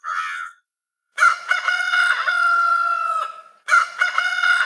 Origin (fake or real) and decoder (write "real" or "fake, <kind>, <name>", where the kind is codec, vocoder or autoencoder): fake, vocoder, WaveNeXt